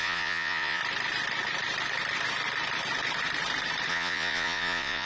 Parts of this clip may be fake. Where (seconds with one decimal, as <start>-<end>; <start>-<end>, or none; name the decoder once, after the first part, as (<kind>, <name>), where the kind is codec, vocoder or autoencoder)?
0.0-0.8 (vocoder, Vocos); 3.9-5.1